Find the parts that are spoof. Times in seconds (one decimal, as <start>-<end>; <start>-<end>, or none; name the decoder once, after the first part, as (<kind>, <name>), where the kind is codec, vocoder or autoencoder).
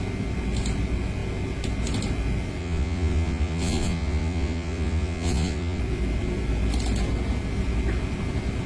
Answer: 2.6-5.8 (vocoder, Vocos)